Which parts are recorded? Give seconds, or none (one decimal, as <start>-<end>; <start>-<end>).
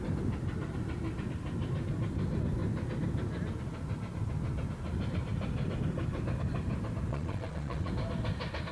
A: 0.0-7.1; 7.9-8.7